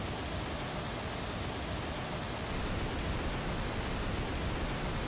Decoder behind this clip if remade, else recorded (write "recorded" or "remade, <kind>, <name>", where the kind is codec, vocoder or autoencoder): recorded